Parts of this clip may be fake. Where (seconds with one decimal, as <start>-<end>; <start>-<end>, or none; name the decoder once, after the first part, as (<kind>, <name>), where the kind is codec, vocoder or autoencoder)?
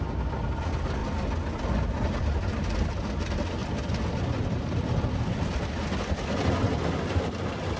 none